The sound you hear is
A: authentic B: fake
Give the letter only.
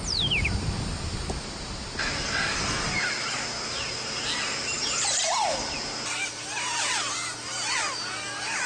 A